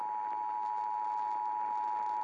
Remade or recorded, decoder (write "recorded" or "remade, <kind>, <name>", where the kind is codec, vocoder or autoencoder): recorded